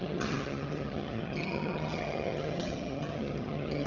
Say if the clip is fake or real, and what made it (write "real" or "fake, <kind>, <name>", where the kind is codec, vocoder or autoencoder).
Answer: fake, vocoder, HiFi-GAN